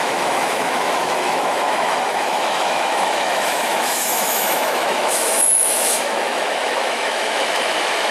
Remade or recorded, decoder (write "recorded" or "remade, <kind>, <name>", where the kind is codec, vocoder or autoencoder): remade, autoencoder, DAC-VAE